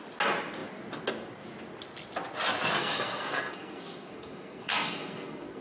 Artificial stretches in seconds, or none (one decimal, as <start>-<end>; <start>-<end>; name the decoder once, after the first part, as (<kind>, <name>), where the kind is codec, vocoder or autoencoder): 2.8-5.6 (codec, SNAC)